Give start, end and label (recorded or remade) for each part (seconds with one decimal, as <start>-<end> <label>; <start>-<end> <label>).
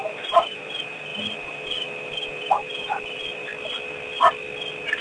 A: 0.0-3.5 remade; 3.5-5.0 recorded